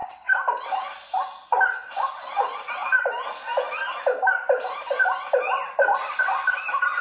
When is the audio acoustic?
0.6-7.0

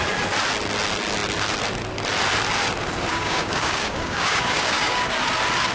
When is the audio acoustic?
0.0-3.1; 5.0-5.7

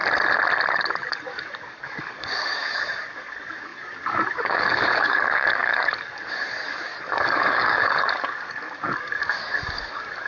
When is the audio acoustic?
0.0-1.1